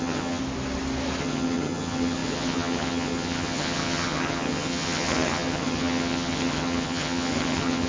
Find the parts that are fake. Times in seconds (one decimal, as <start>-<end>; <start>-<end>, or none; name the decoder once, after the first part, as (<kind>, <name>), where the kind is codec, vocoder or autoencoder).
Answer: 0.0-0.4 (vocoder, HiFi-GAN); 1.2-7.9